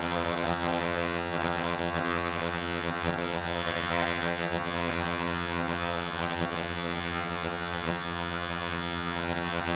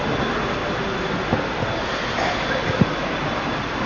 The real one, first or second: second